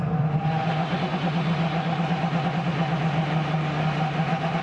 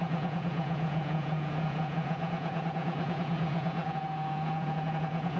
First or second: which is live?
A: first